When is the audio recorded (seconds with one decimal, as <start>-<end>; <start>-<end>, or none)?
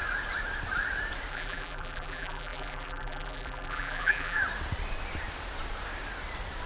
0.0-1.3; 4.4-6.7